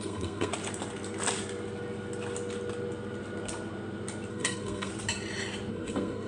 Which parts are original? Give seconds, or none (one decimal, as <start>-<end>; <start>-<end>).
0.5-4.3; 4.9-5.7